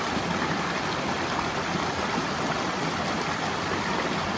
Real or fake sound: real